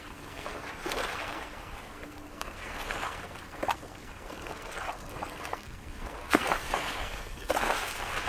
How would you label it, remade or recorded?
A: remade